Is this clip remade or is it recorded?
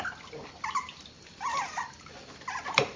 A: recorded